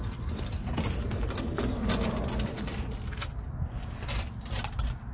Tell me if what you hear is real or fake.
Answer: real